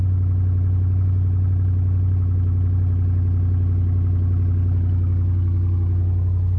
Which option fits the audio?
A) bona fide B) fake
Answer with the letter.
A